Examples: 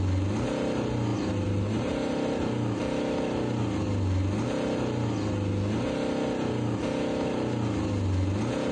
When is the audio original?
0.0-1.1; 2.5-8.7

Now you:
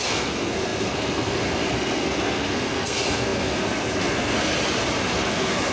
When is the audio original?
4.5-5.0

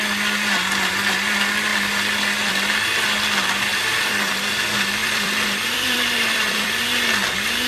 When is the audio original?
0.0-3.7; 4.3-5.0; 6.7-7.7

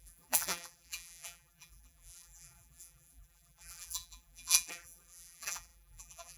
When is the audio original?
none

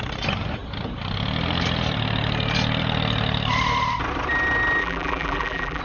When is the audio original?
0.0-4.8

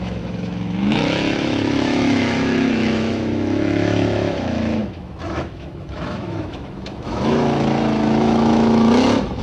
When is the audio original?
none

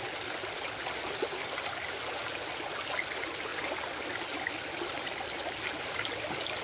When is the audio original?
0.0-6.6

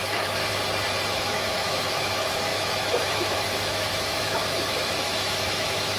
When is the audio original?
0.4-1.1